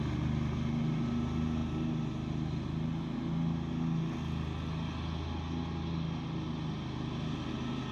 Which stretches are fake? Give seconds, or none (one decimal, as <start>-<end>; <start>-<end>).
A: none